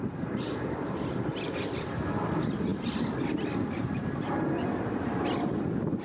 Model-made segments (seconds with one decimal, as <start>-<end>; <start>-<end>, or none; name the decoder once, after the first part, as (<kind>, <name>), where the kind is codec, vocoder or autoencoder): none